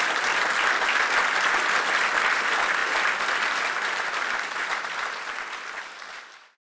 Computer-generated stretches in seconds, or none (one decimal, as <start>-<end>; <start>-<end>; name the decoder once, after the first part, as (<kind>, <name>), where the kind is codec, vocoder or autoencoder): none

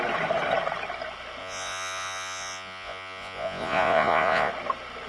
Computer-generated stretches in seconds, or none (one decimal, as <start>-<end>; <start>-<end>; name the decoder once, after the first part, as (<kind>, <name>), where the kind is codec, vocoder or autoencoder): 1.4-4.5 (vocoder, Vocos)

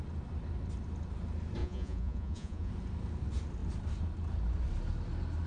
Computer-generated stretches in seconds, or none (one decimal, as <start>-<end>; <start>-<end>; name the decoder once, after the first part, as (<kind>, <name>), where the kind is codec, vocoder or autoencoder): 1.6-2.7 (vocoder, Vocos)

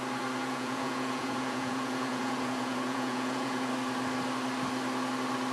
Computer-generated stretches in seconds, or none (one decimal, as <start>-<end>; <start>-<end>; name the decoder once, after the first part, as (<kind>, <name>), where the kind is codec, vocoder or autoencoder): 0.4-3.7 (vocoder, Vocos)

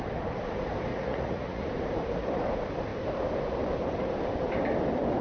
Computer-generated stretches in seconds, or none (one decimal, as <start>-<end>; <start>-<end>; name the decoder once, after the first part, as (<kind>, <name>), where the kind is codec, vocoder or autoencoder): 0.9-1.6 (vocoder, Vocos)

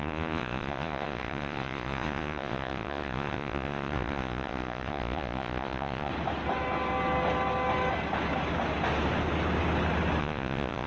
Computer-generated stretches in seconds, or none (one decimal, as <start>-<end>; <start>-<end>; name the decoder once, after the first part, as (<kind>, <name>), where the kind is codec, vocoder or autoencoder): 0.0-6.1 (vocoder, Vocos); 10.2-10.9

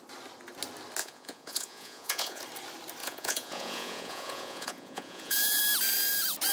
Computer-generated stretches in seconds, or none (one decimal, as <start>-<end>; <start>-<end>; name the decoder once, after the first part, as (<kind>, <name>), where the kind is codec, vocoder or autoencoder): 1.0-2.4 (vocoder, Vocos); 3.0-5.6

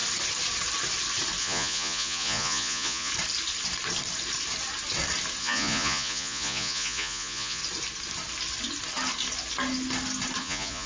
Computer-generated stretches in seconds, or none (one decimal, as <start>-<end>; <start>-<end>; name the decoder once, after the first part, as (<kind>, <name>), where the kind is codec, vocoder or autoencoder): 1.4-3.1 (vocoder, Vocos); 5.4-7.6; 10.4-10.9